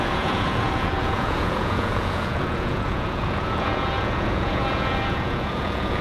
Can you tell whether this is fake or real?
fake